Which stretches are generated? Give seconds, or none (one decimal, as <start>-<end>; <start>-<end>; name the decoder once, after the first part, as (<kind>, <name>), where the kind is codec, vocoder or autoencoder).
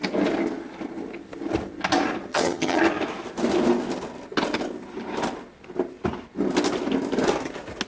2.3-2.8 (vocoder, HiFi-GAN)